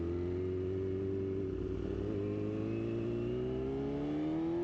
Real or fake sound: real